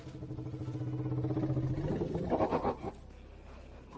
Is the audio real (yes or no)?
yes